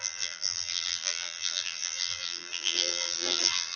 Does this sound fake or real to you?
fake